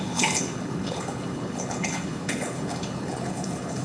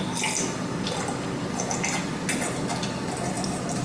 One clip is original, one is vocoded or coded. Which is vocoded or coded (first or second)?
first